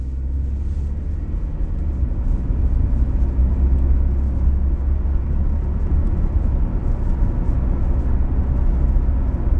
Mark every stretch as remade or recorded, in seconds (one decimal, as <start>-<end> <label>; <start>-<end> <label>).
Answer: 0.0-9.6 recorded